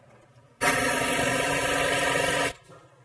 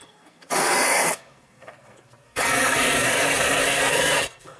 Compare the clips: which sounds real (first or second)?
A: first